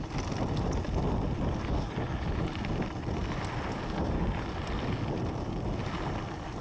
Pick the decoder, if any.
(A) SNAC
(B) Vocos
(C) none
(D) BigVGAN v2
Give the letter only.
C